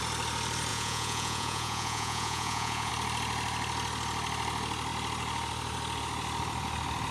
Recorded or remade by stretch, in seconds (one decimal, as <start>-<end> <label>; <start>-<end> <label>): 0.0-0.7 recorded; 0.7-2.9 remade; 2.9-7.1 recorded